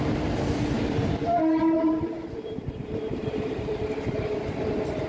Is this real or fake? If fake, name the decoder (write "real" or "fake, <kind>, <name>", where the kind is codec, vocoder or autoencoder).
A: fake, vocoder, BigVGAN v2